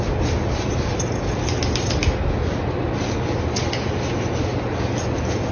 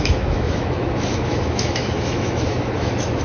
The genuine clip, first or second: first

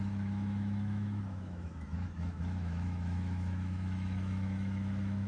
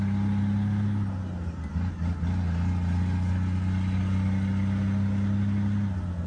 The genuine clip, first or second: second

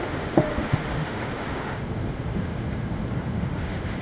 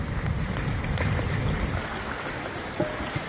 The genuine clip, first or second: second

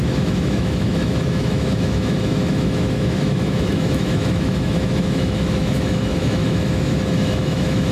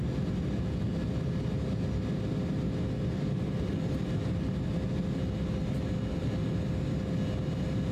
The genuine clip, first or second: second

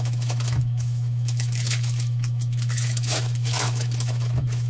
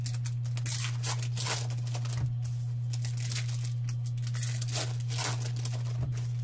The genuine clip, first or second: second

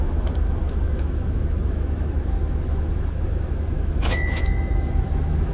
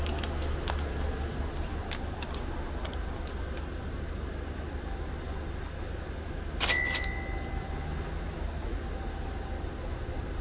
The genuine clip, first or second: second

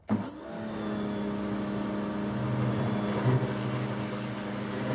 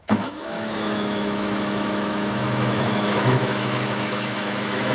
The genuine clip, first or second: first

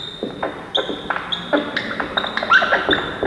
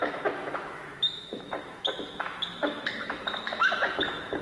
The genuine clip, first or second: first